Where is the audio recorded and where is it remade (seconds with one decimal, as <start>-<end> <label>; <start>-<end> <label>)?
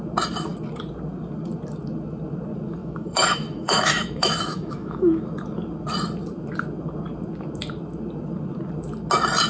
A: 0.0-2.8 recorded; 2.8-5.2 remade; 5.2-9.5 recorded